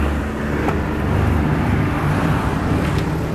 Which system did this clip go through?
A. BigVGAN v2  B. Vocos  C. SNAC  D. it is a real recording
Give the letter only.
A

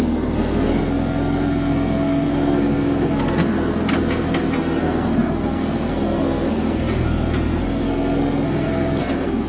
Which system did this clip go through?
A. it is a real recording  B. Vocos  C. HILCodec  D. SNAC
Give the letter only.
D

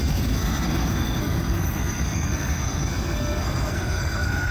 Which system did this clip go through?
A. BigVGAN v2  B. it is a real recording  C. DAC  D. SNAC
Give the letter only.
D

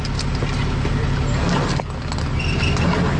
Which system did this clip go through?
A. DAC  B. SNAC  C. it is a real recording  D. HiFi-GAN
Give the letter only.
C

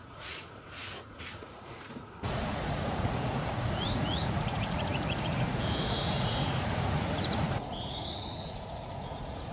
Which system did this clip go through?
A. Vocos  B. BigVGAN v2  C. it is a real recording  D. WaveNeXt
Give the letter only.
A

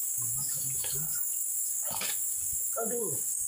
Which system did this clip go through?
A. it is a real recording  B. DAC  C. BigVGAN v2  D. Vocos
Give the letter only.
B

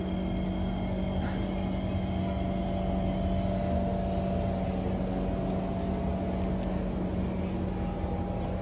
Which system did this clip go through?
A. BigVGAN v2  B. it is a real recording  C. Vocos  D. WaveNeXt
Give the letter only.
B